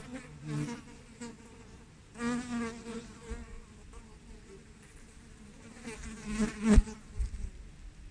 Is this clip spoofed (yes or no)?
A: no